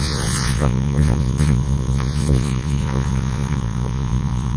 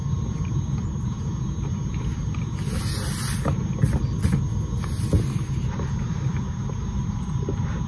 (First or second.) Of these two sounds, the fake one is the first